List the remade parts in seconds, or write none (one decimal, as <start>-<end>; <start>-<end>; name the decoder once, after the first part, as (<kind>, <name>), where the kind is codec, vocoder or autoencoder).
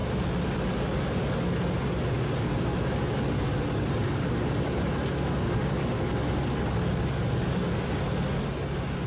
none